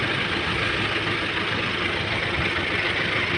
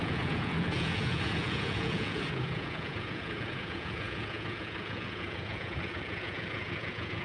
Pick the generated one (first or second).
second